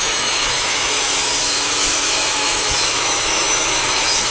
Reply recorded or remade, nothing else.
remade